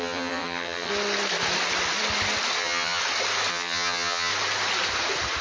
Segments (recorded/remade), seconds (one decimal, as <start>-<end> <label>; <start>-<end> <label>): 0.0-0.9 remade; 0.9-2.6 recorded; 2.6-3.0 remade; 3.0-3.5 recorded; 3.5-4.3 remade; 4.3-5.4 recorded